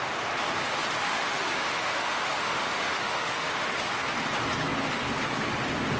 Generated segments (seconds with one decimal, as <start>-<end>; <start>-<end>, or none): 1.1-3.7